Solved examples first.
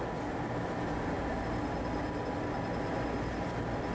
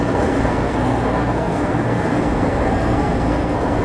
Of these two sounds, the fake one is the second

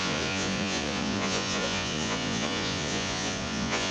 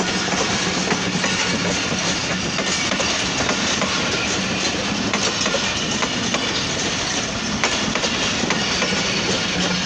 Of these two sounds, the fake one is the first